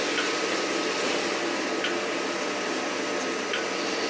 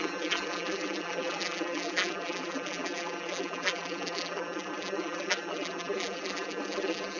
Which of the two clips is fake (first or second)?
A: second